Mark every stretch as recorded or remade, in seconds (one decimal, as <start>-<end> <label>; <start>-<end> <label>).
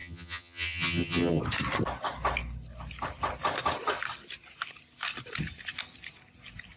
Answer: 0.0-1.4 remade; 1.4-6.8 recorded